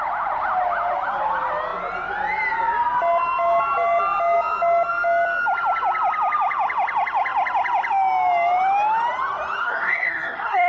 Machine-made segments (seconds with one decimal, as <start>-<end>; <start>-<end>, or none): 9.6-10.7